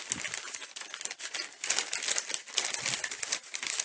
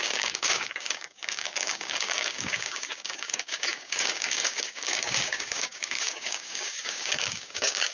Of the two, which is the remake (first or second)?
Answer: second